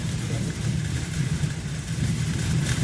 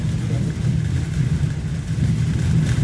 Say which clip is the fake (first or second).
first